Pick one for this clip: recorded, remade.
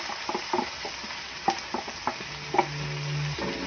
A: recorded